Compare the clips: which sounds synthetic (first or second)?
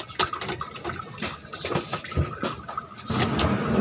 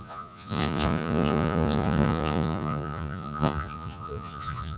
second